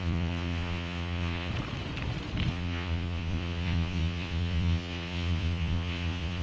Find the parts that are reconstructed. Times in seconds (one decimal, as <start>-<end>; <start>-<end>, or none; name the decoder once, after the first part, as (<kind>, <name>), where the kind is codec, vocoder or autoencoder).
0.0-1.5 (vocoder, Vocos); 2.5-6.4